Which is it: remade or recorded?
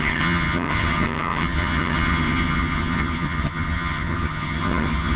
remade